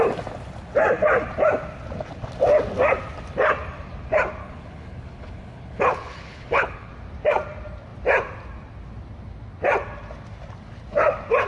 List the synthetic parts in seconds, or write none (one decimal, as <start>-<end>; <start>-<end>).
4.4-6.9

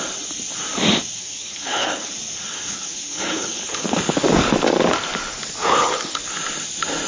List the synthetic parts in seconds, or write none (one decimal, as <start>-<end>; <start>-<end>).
1.2-2.1; 2.5-4.0; 5.6-6.3

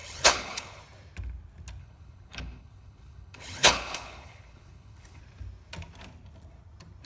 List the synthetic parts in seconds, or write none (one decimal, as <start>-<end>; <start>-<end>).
0.0-0.8; 1.8-5.2